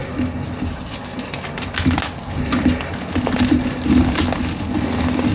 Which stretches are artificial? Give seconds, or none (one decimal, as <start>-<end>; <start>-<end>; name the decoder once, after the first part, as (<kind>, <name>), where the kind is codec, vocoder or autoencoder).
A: none